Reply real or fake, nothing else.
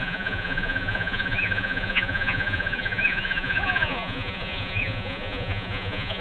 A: fake